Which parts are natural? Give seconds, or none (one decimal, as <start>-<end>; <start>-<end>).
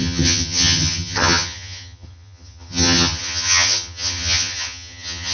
none